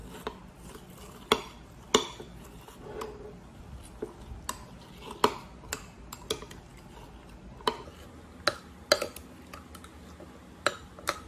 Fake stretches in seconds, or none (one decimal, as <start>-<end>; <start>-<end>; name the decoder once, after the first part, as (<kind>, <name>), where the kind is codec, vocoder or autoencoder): none